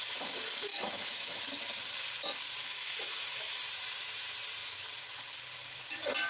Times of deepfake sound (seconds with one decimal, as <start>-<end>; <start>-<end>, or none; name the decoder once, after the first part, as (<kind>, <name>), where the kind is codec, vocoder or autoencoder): 0.7-1.4 (autoencoder, DAC-VAE); 2.6-3.6